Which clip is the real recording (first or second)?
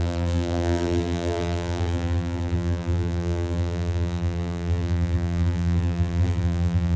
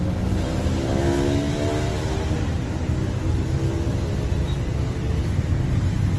second